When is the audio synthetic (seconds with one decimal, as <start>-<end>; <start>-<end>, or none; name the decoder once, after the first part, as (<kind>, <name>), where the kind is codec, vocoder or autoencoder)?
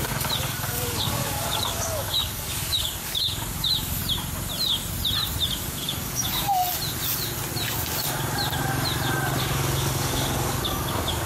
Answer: 0.0-4.0 (codec, DAC); 5.5-6.6; 9.4-11.3